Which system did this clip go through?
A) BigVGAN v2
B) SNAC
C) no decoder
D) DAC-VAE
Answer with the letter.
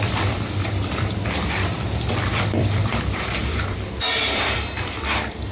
A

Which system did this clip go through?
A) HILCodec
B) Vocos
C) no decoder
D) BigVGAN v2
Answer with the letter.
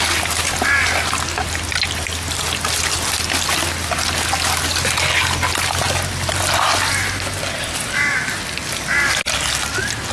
C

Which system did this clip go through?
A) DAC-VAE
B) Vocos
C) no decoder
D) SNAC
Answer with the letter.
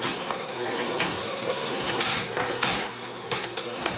D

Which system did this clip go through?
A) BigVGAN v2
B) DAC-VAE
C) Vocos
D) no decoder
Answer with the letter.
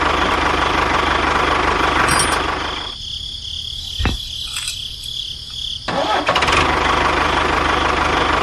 D